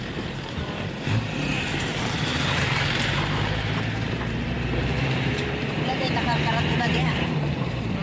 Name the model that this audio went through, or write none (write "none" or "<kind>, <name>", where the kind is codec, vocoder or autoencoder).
vocoder, BigVGAN v2